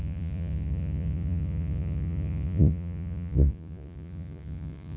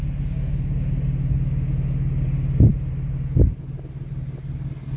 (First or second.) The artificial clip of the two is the first